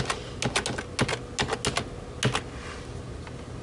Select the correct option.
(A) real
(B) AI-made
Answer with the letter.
A